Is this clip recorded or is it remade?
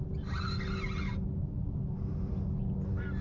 recorded